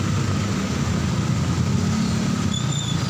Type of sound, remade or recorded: recorded